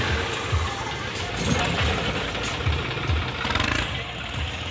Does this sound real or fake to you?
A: real